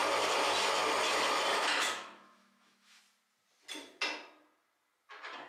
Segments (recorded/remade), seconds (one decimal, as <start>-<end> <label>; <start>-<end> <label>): 0.0-1.5 recorded; 1.5-3.0 remade; 3.0-5.5 recorded

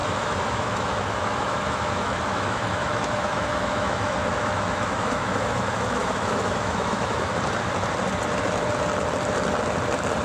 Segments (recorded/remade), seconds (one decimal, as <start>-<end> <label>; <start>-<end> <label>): 0.0-7.3 remade; 7.3-10.2 recorded

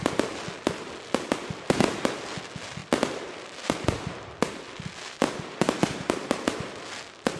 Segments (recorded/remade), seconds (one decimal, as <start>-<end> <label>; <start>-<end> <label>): 0.0-7.4 recorded